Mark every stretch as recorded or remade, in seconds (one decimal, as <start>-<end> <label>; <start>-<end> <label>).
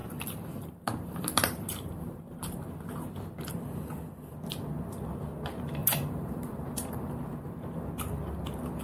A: 0.0-3.5 remade; 3.5-5.8 recorded; 5.8-7.6 remade; 7.6-8.8 recorded